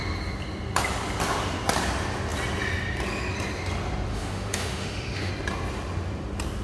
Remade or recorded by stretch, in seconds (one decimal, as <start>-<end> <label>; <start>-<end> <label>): 0.0-4.1 recorded; 4.1-5.3 remade; 5.3-6.6 recorded